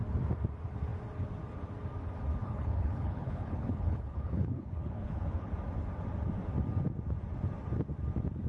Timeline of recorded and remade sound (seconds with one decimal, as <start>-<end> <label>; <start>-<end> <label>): 0.0-2.4 recorded; 2.4-5.5 remade; 5.5-8.5 recorded